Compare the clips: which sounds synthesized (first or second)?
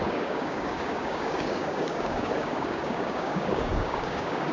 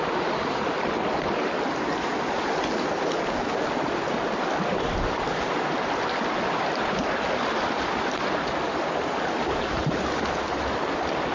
first